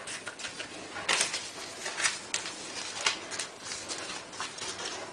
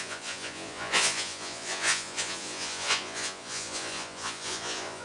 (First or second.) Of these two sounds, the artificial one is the second